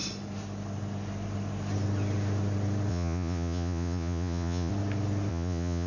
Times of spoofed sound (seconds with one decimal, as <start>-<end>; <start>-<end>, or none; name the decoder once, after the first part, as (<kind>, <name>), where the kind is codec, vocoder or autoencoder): 2.9-4.7 (vocoder, Vocos); 5.3-5.9